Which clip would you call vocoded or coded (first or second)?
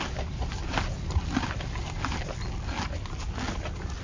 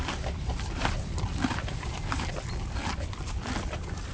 second